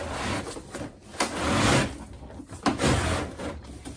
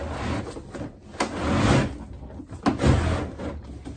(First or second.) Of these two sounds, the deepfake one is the first